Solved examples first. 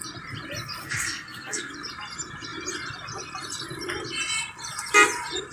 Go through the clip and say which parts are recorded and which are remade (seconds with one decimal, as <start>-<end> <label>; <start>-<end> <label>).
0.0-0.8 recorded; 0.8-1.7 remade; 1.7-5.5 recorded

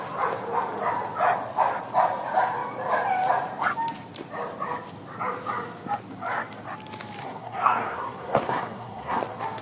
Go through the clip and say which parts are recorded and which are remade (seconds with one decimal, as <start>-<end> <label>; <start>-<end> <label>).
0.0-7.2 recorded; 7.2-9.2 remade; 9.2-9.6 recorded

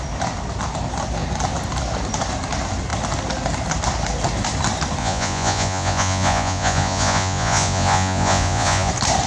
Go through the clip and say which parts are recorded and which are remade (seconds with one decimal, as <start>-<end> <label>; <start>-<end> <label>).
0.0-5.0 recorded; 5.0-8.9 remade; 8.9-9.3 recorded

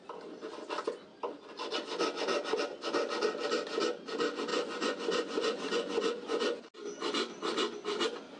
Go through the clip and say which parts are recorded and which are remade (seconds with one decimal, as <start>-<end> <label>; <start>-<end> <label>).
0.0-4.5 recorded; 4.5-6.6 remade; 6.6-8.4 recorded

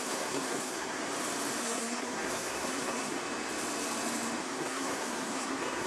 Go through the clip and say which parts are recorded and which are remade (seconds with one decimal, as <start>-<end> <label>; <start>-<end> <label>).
0.0-1.0 remade; 1.0-1.6 recorded; 1.6-3.2 remade; 3.2-4.4 recorded; 4.4-5.9 remade

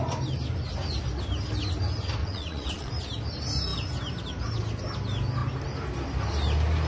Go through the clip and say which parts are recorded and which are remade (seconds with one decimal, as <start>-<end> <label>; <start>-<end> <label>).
0.0-2.2 recorded; 2.2-2.9 remade; 2.9-6.9 recorded

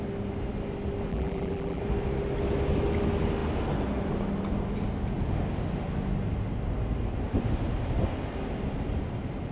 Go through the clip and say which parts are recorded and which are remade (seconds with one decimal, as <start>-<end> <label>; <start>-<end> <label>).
0.0-1.1 recorded; 1.1-1.8 remade; 1.8-9.5 recorded

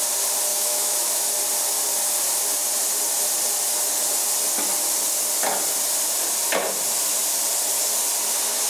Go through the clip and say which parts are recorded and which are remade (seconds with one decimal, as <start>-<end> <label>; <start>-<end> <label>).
0.0-0.5 recorded; 0.5-1.1 remade; 1.1-8.7 recorded